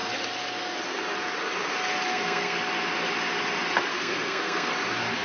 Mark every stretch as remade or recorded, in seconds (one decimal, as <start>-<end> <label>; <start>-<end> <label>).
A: 0.0-2.1 recorded; 2.1-2.6 remade; 2.6-3.9 recorded; 3.9-4.7 remade; 4.7-5.2 recorded